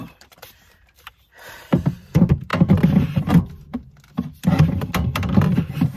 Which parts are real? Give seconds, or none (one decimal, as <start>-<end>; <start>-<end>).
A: 2.5-6.0